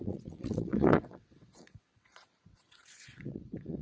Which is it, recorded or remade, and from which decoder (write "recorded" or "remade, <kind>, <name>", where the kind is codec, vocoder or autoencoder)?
remade, vocoder, WaveNeXt